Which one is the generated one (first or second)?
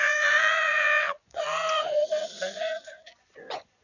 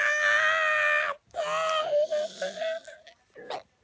first